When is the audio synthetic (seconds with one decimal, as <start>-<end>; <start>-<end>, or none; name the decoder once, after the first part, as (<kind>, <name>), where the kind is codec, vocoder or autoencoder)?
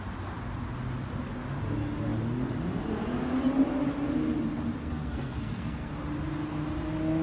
4.8-5.9 (codec, SNAC)